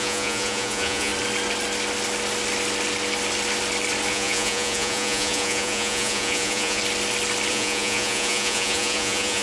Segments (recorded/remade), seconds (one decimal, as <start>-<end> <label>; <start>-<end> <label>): 0.0-1.1 remade; 1.1-4.1 recorded; 4.1-6.8 remade; 6.8-7.5 recorded; 7.5-9.4 remade

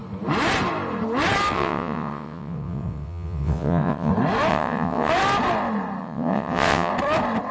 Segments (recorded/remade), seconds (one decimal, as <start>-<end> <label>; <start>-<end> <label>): 0.0-1.5 recorded; 1.5-4.1 remade; 4.1-4.5 recorded; 4.5-5.1 remade; 5.1-6.0 recorded; 6.0-6.9 remade; 6.9-7.5 recorded